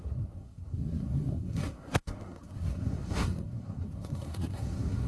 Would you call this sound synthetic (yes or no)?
yes